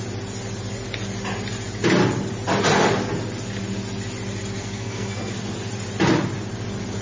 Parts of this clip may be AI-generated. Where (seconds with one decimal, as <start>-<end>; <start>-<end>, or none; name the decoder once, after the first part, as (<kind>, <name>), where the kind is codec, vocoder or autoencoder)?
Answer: 4.6-5.3 (codec, SNAC)